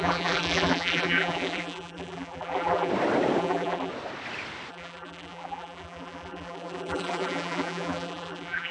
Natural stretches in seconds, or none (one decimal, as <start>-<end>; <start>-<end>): 2.9-3.4; 3.9-4.7